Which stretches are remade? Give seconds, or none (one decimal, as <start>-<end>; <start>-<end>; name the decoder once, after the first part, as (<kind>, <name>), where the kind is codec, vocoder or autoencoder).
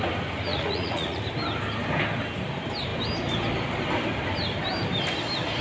0.5-1.2 (vocoder, Vocos)